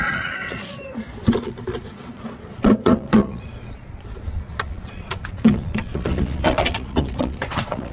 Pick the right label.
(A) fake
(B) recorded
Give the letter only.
A